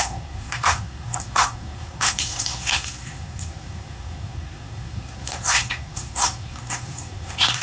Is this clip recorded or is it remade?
remade